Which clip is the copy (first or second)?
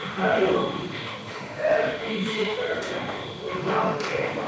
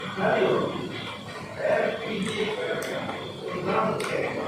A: first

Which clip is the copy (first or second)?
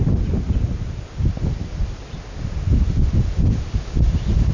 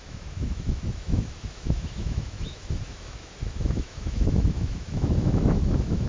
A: second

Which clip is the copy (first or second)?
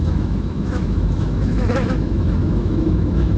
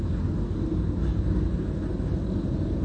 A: first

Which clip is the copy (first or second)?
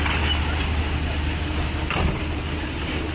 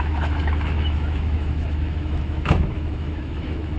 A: second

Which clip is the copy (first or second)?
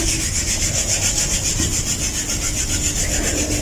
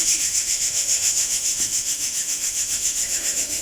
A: second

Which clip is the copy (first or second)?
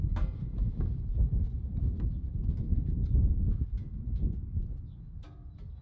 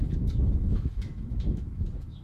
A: second